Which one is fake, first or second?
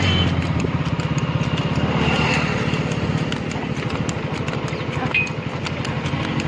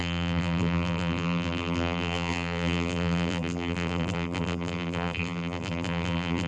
second